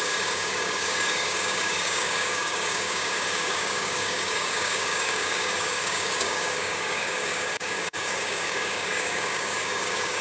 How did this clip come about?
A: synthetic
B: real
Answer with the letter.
A